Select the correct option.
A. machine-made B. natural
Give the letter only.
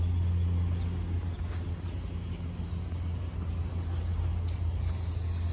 B